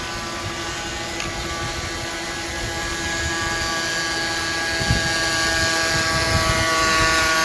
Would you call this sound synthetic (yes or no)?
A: no